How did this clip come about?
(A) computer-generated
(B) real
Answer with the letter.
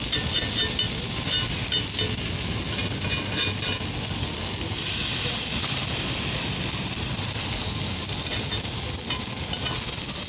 B